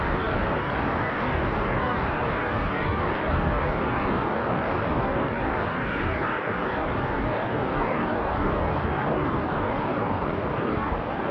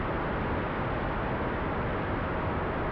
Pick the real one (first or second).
second